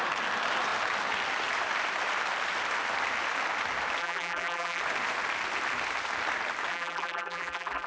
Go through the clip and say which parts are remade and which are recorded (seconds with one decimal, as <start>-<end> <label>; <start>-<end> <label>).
0.0-4.0 recorded; 4.0-4.8 remade; 4.8-6.7 recorded; 6.7-7.9 remade